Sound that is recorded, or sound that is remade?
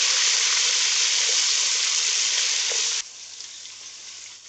recorded